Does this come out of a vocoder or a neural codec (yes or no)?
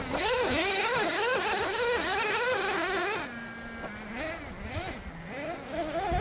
no